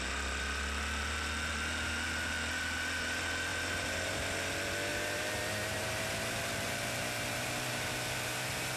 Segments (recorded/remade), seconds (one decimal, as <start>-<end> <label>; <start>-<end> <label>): 0.0-3.5 recorded; 3.5-4.5 remade; 4.5-4.9 recorded; 4.9-8.8 remade